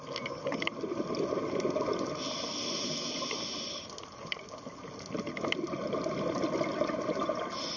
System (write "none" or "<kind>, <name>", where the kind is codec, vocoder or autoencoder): none